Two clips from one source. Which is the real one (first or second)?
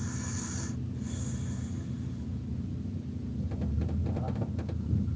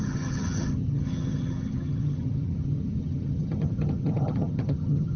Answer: first